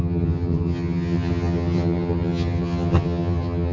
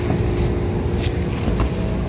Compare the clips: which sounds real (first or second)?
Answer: second